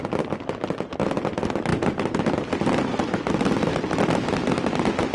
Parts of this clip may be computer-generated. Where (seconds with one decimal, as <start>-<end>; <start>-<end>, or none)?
none